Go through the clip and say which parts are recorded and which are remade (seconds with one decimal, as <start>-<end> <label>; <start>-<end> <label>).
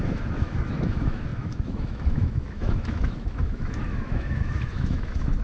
0.0-5.4 remade